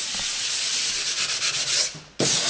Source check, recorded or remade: recorded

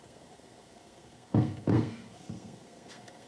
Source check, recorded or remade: remade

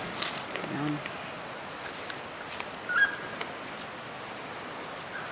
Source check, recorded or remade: recorded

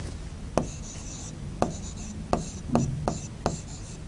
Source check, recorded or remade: recorded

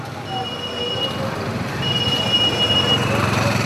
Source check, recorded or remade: recorded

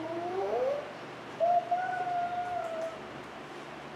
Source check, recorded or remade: remade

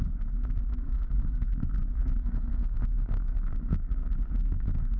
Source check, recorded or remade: remade